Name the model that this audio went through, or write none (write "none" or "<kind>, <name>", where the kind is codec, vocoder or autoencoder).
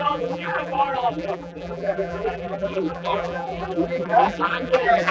vocoder, BigVGAN v2